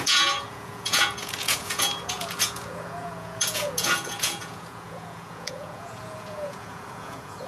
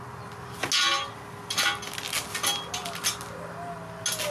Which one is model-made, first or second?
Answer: first